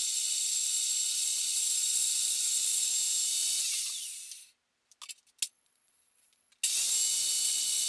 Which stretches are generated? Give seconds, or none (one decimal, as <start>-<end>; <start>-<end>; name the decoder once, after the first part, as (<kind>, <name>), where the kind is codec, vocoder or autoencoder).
0.0-2.9 (vocoder, Vocos); 5.5-6.5; 7.4-7.9